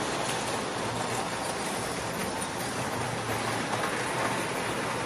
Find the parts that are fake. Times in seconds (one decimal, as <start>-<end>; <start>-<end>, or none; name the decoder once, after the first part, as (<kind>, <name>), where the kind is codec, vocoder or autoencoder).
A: none